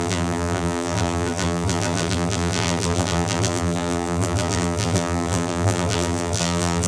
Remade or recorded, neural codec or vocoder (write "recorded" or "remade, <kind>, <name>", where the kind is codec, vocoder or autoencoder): remade, vocoder, BigVGAN v2